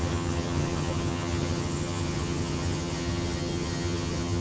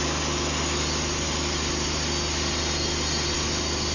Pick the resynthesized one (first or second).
first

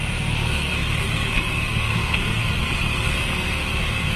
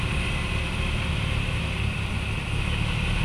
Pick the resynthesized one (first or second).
first